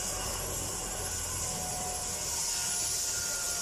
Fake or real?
real